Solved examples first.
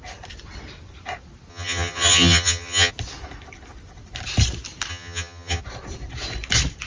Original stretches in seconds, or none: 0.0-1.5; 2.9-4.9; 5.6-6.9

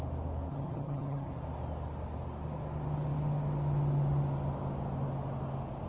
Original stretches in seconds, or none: 0.0-0.5; 1.3-5.9

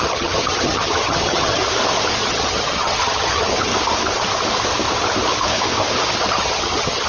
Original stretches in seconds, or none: 1.6-2.2; 3.7-6.3

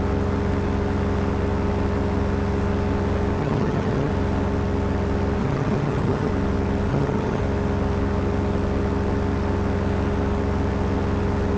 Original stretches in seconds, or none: 0.0-3.4; 4.1-5.4; 6.3-6.9; 7.4-11.6

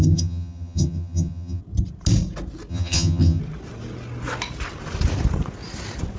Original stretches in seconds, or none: 1.6-2.7; 3.4-6.2

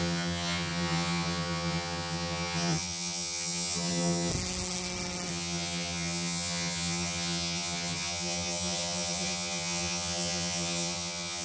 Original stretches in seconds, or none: 4.3-5.3

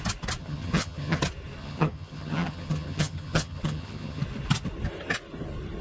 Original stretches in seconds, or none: 0.0-0.4; 1.2-1.6; 4.2-5.8

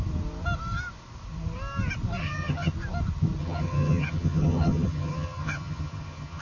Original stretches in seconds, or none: 0.0-2.2; 2.7-3.4